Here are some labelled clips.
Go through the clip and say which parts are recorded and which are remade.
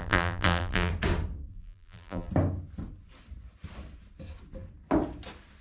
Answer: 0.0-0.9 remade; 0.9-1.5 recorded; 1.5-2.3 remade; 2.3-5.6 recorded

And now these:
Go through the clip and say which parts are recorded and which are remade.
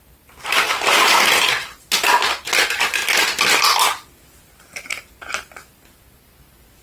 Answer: 0.0-6.8 recorded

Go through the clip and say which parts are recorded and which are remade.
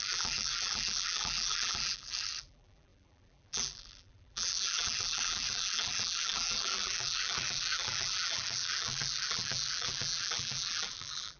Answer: 0.0-11.4 remade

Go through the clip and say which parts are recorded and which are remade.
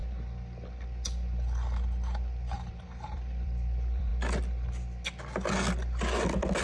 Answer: 0.0-2.7 recorded; 2.7-4.1 remade; 4.1-6.6 recorded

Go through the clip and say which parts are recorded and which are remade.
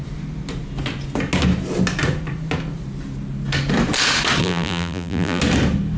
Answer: 0.0-4.4 recorded; 4.4-5.4 remade; 5.4-6.0 recorded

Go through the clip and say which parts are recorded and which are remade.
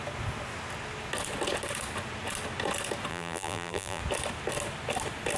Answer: 0.0-3.1 recorded; 3.1-4.0 remade; 4.0-5.4 recorded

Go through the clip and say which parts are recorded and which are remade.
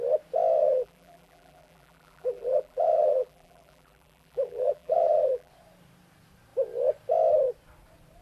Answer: 0.0-0.6 recorded; 0.6-5.5 remade; 5.5-8.2 recorded